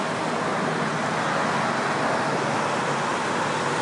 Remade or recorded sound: recorded